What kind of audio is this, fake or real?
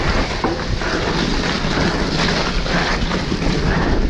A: real